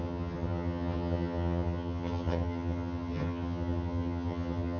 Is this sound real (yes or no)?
no